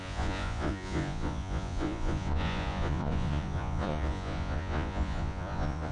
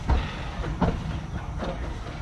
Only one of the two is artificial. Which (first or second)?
first